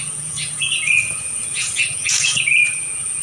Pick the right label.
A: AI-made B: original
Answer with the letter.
A